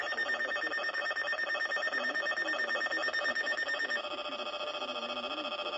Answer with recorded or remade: recorded